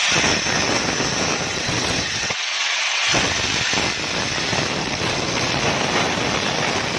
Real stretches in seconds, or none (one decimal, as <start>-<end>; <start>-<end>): 0.0-1.5; 3.3-4.8; 5.6-7.0